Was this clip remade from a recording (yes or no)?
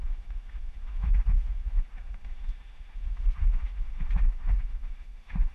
yes